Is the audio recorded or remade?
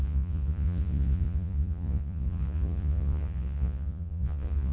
remade